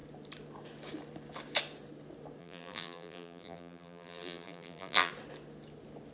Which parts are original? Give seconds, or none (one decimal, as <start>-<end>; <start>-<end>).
0.0-2.4; 5.1-6.1